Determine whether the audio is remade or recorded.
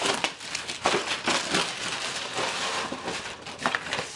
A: recorded